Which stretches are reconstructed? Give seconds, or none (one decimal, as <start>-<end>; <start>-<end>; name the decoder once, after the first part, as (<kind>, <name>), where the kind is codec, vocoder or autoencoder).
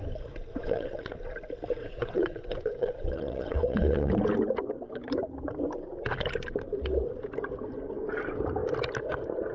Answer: 0.5-1.1 (vocoder, WaveNeXt); 1.8-4.1